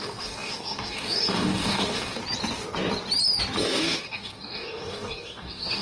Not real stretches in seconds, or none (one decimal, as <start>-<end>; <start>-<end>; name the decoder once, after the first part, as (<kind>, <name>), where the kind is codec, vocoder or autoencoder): 0.0-2.2 (codec, DAC); 3.7-5.8